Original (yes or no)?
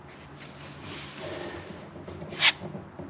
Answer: yes